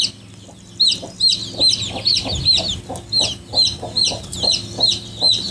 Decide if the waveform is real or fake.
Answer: real